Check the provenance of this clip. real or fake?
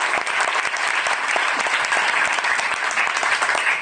real